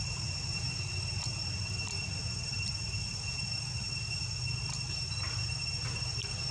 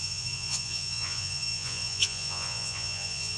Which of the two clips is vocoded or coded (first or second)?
second